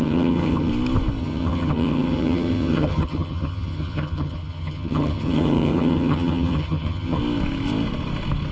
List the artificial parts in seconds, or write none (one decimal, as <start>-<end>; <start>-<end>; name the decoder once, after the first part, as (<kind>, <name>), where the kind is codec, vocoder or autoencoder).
0.0-0.7 (vocoder, HiFi-GAN); 1.2-7.2

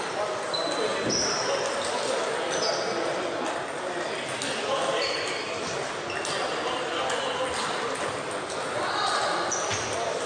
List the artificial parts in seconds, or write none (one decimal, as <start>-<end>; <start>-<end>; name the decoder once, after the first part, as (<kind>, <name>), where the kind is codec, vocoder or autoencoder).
none

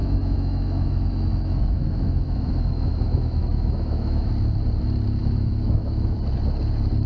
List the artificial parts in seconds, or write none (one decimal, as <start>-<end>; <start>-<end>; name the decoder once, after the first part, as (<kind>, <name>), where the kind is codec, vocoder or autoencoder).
0.0-4.3 (autoencoder, DAC-VAE); 5.2-6.2